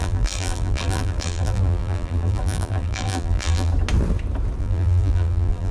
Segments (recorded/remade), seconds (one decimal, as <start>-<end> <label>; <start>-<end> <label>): 0.0-3.7 remade; 3.7-4.6 recorded; 4.6-5.7 remade